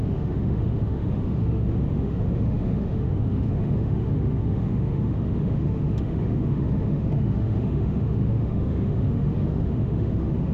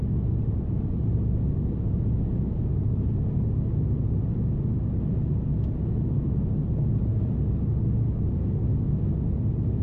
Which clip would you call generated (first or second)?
first